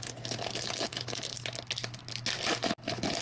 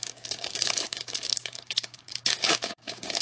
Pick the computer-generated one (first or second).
second